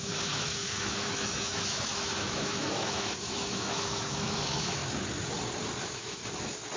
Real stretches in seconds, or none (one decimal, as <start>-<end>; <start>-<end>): 4.8-5.8; 6.2-6.8